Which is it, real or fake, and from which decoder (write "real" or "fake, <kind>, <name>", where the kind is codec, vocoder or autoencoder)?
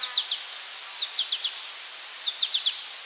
real